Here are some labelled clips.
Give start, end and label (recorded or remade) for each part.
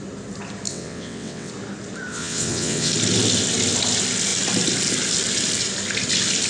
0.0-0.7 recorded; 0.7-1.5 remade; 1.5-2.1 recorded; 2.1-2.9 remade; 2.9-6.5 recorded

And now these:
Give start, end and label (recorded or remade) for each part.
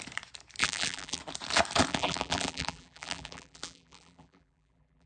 0.0-0.6 recorded; 0.6-1.2 remade; 1.2-1.9 recorded; 1.9-5.1 remade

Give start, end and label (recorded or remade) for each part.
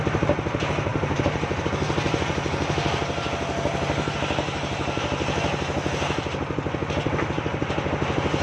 0.0-0.9 recorded; 0.9-1.6 remade; 1.6-8.4 recorded